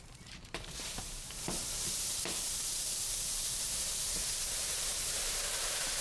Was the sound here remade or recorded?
remade